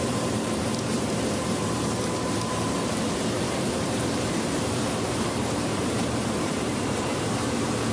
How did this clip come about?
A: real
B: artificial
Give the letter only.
B